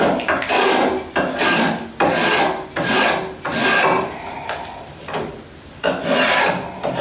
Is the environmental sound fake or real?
real